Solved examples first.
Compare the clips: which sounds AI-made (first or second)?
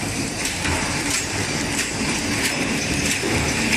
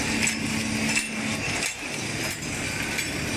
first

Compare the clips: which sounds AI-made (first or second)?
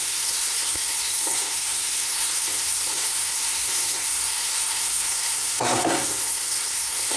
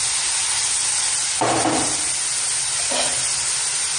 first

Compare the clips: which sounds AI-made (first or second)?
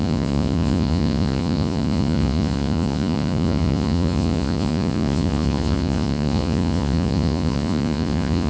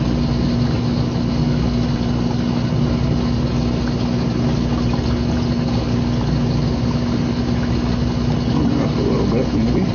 first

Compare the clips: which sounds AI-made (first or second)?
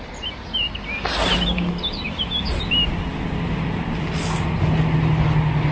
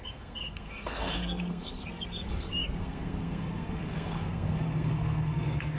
second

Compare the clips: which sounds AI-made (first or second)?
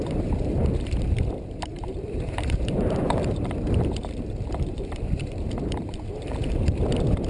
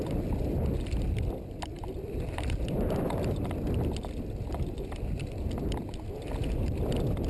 first